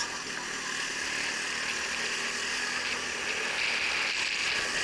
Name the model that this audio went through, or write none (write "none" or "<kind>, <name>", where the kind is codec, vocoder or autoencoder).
none